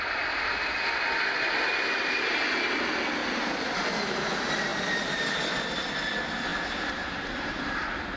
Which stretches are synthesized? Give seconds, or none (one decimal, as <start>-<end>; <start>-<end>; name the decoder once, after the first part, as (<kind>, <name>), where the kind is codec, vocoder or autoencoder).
3.2-3.8 (vocoder, BigVGAN v2); 4.7-5.5; 6.5-8.2